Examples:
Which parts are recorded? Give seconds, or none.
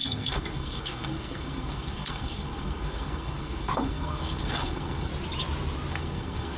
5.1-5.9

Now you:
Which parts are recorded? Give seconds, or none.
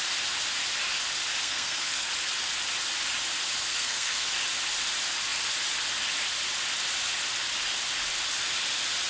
0.0-1.4; 2.1-3.7; 4.3-9.1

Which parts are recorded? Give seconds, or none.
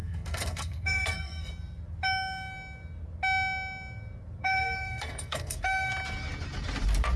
1.5-4.4; 5.9-7.2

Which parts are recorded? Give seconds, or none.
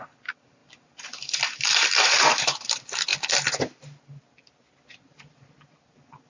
0.6-1.4; 3.1-5.1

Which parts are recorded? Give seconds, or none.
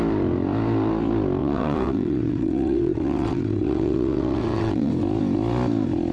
0.0-1.4; 4.9-6.1